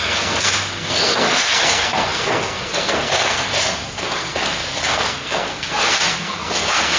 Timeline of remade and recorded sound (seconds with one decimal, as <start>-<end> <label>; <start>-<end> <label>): 0.0-7.0 remade